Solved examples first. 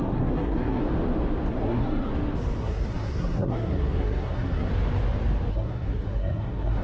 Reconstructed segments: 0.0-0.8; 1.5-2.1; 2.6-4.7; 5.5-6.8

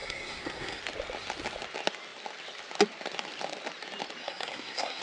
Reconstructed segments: 0.0-0.8; 4.2-5.0